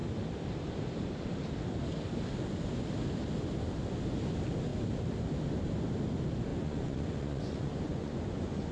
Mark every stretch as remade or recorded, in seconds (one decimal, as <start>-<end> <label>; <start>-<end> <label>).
0.0-6.5 recorded; 6.5-8.7 remade